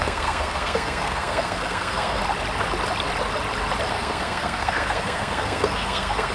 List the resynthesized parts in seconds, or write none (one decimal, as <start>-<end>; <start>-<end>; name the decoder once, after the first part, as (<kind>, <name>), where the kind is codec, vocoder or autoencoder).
0.0-2.2 (codec, SNAC); 3.9-6.3